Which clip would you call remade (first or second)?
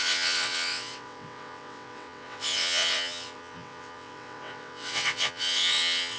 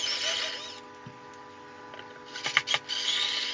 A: first